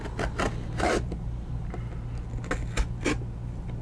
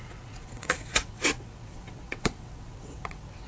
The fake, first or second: second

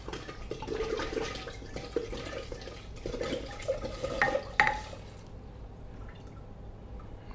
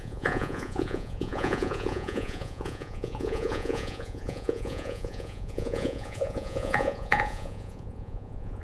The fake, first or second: second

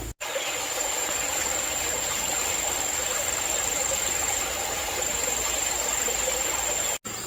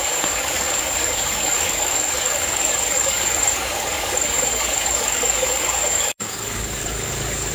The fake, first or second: second